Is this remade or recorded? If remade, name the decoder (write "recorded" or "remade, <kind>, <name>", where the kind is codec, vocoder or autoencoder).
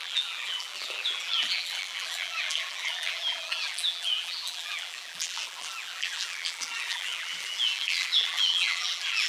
remade, vocoder, BigVGAN v2